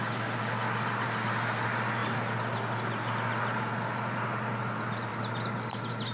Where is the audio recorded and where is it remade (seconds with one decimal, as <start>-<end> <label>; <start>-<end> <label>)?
0.0-6.1 recorded